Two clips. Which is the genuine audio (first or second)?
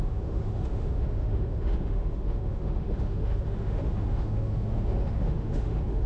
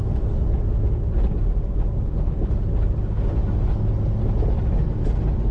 second